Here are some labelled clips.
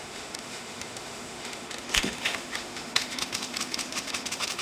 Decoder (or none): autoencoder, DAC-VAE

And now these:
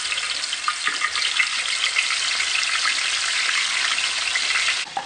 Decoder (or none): none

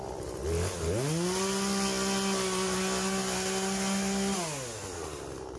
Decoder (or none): none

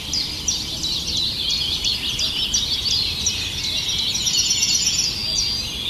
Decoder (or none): none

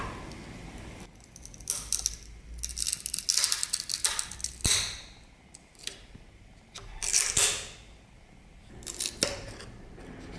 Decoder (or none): none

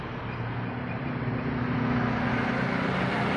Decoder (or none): none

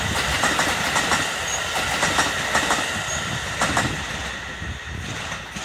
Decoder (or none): none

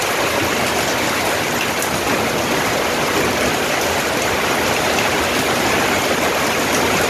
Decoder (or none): none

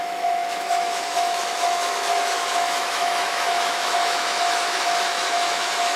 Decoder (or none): autoencoder, DAC-VAE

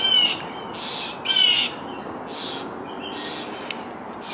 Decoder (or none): none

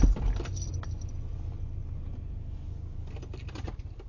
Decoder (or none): none